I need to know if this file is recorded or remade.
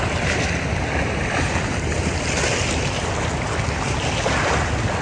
recorded